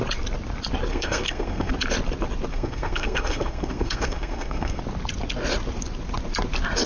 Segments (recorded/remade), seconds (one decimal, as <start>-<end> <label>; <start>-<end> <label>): 0.0-0.9 recorded; 0.9-1.7 remade; 1.7-2.5 recorded; 2.5-4.8 remade; 4.8-6.9 recorded